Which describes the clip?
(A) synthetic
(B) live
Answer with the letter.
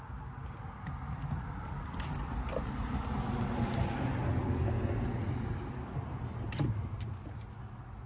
B